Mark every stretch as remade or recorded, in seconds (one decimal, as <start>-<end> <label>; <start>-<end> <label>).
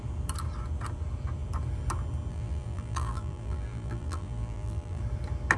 0.0-2.3 recorded; 2.3-5.0 remade; 5.0-5.6 recorded